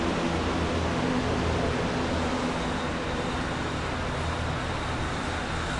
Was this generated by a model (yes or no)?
no